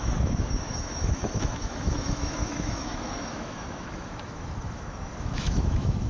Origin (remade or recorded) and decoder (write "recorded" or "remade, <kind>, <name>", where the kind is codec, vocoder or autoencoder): remade, autoencoder, DAC-VAE